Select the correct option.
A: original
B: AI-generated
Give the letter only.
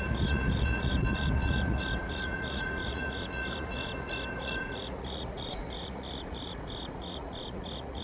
B